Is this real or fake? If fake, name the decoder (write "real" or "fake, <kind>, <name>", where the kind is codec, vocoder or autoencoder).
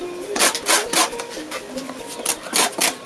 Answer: real